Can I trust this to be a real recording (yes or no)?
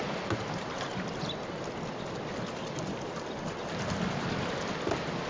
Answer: yes